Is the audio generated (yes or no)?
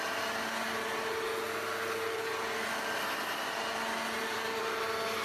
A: no